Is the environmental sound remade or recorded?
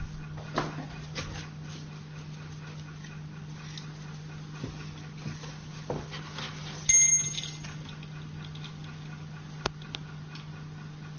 recorded